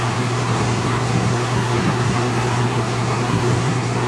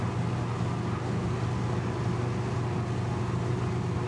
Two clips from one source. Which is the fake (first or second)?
first